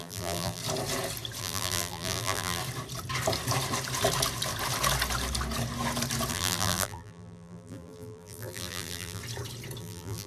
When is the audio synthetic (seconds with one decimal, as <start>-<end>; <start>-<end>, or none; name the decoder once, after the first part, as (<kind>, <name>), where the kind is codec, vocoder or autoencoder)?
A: 0.0-0.6 (vocoder, BigVGAN v2); 1.4-2.6; 6.3-9.2; 9.8-10.3